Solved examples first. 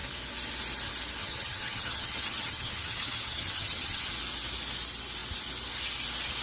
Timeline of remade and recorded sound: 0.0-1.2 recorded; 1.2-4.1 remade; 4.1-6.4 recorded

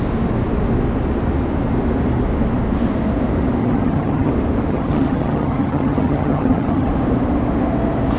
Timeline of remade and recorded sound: 0.0-3.6 recorded; 3.6-4.3 remade; 4.3-4.7 recorded; 4.7-6.9 remade; 6.9-8.2 recorded

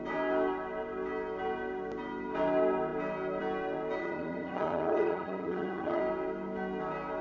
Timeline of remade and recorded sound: 0.0-4.0 recorded; 4.0-6.0 remade; 6.0-7.2 recorded